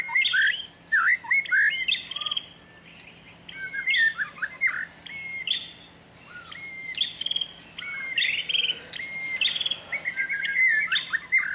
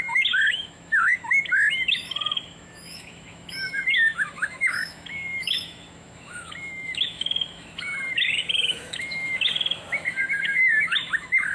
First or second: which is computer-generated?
second